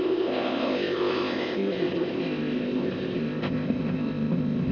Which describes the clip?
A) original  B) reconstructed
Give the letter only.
B